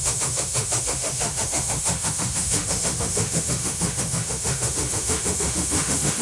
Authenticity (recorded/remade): remade